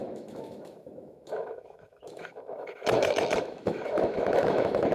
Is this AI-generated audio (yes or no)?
yes